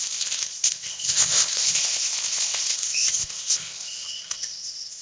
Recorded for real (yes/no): no